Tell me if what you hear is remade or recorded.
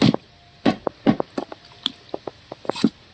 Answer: recorded